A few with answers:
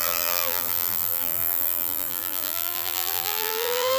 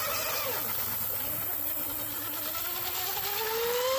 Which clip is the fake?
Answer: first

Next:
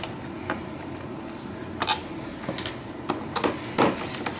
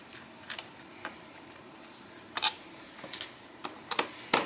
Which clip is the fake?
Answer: second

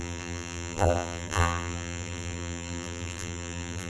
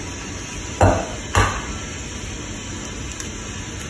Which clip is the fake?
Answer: first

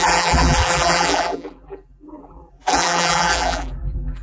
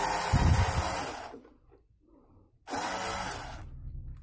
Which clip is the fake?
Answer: first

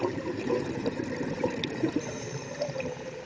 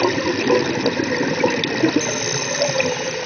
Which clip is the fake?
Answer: first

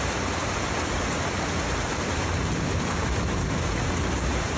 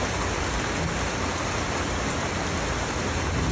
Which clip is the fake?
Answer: first